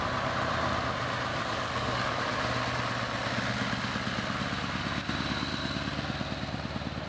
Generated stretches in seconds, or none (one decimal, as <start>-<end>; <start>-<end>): 1.3-2.2